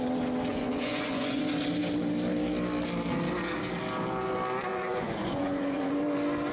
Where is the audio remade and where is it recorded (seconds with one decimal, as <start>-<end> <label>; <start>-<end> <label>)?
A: 0.0-0.5 recorded; 0.5-1.4 remade; 1.4-4.7 recorded; 4.7-5.9 remade; 5.9-6.5 recorded